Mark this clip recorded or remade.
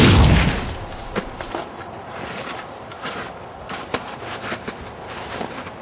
recorded